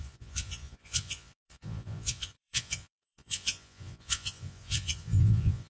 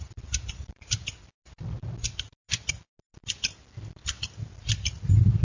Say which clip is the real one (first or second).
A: second